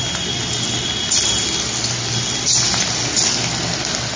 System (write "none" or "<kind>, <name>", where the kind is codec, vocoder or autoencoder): none